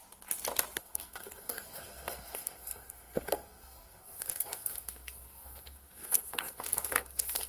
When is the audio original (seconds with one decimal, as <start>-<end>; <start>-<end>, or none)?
0.0-0.8